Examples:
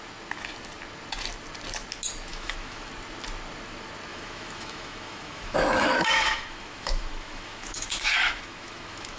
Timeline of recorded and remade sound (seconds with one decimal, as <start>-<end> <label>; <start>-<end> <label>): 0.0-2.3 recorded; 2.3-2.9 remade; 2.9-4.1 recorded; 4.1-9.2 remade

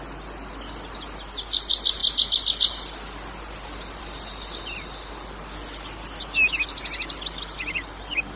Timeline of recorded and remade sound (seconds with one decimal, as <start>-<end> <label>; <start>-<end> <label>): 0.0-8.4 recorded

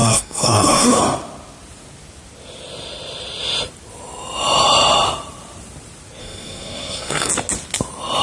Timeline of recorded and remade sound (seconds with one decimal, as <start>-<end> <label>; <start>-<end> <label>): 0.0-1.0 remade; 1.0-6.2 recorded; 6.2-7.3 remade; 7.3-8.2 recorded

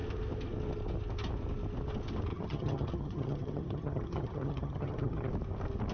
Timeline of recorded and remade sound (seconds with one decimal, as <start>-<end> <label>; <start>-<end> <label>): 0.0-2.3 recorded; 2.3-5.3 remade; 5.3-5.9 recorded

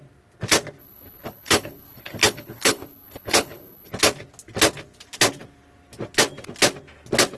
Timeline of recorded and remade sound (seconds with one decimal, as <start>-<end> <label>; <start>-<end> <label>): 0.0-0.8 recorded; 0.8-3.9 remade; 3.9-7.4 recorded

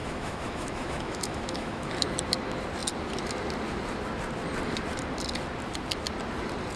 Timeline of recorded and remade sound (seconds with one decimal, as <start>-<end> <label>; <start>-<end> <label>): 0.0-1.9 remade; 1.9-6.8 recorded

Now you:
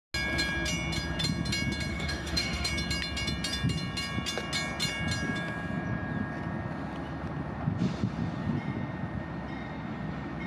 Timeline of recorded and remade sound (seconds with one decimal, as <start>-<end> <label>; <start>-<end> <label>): 0.0-1.9 recorded; 1.9-2.7 remade; 2.7-10.5 recorded